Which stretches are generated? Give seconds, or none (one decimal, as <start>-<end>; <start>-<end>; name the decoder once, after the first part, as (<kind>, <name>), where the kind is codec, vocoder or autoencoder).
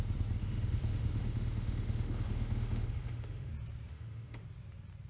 0.4-3.5 (autoencoder, DAC-VAE); 3.9-4.4